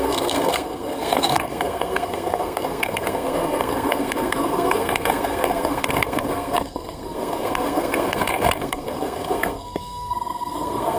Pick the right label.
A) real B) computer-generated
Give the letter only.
B